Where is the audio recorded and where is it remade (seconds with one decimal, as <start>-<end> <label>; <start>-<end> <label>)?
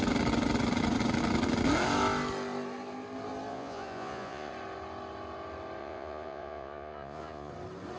0.0-3.5 recorded; 3.5-4.5 remade; 4.5-5.8 recorded; 5.8-7.5 remade; 7.5-8.0 recorded